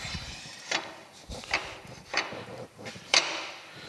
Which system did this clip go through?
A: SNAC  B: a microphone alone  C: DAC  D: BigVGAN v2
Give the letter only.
D